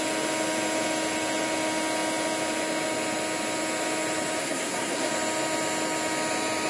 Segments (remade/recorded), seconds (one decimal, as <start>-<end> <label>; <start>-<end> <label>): 0.0-4.4 recorded; 4.4-5.1 remade; 5.1-6.7 recorded